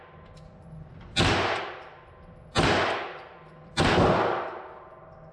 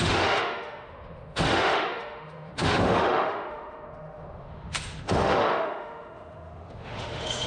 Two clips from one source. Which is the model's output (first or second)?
second